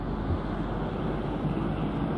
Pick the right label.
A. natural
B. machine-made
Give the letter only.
A